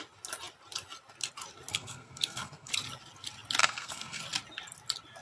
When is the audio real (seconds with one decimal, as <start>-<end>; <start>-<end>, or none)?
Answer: 0.0-1.7; 2.7-3.6; 4.2-5.2